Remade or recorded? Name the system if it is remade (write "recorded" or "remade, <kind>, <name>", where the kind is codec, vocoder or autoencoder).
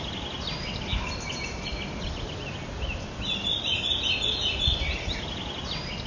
recorded